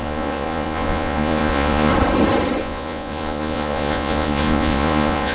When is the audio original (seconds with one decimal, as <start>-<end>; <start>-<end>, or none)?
1.9-2.6

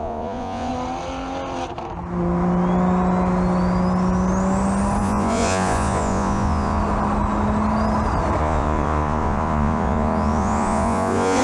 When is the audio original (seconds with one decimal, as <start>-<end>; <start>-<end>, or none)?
0.7-5.0; 6.8-8.4

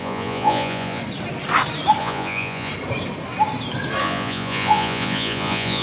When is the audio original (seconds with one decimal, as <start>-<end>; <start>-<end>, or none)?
1.0-2.0; 2.7-4.0

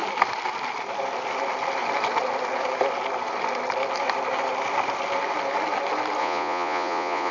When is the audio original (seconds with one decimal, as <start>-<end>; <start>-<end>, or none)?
0.0-6.2

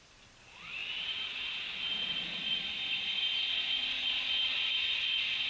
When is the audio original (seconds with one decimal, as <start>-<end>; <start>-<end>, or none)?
none